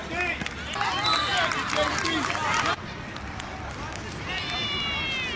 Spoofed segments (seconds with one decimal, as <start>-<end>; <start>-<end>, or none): none